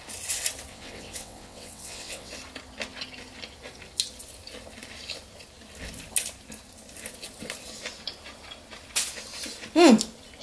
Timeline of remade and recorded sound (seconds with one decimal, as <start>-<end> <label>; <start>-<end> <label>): 0.0-0.7 recorded; 0.7-2.3 remade; 2.3-10.4 recorded